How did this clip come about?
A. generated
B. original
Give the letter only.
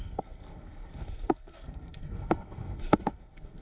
A